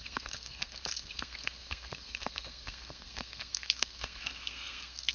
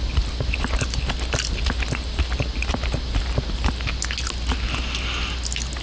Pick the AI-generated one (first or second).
first